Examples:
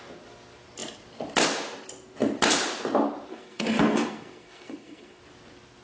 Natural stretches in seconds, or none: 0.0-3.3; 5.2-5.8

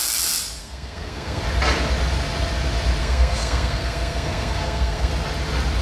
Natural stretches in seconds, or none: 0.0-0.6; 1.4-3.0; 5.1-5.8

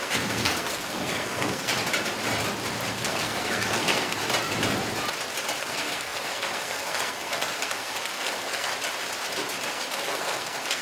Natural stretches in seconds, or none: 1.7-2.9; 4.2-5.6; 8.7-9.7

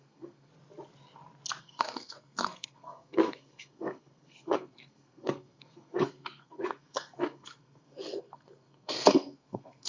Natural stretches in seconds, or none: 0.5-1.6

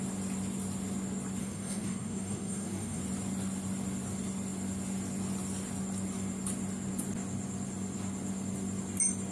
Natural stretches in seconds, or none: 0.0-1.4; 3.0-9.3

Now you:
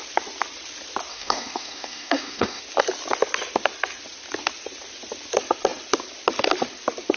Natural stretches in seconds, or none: 0.0-1.1; 2.6-7.2

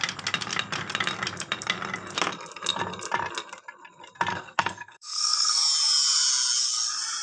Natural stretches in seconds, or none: 0.0-4.3; 5.6-7.2